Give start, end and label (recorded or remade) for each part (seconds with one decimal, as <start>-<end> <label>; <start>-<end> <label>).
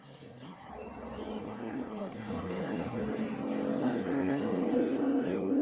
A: 0.0-0.7 remade; 0.7-1.4 recorded; 1.4-3.0 remade; 3.0-3.8 recorded; 3.8-5.6 remade